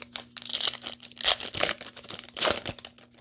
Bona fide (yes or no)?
yes